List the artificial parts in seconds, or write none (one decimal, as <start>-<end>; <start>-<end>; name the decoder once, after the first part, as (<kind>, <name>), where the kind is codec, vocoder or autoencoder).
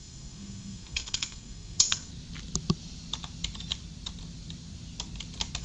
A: 0.0-2.1 (codec, SNAC)